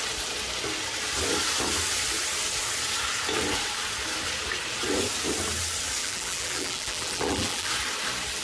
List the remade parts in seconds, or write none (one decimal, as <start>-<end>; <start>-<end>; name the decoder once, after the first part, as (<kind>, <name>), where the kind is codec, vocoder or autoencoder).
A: 6.0-7.7 (vocoder, BigVGAN v2)